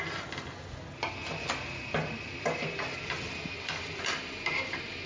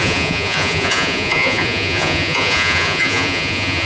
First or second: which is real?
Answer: first